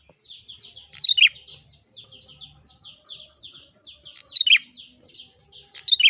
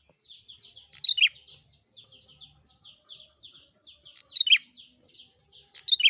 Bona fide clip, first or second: second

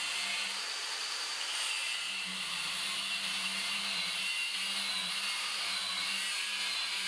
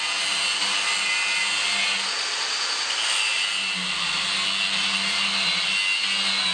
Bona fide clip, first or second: second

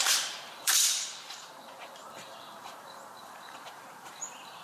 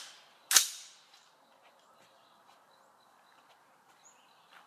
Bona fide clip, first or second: second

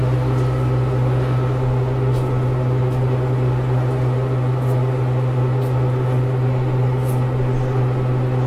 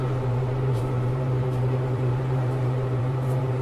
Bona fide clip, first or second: first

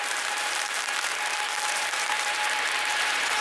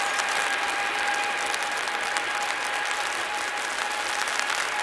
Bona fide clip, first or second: second